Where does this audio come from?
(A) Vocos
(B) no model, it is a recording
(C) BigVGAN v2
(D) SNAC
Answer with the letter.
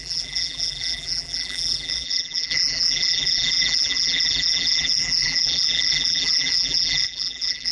C